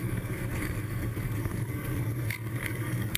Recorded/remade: remade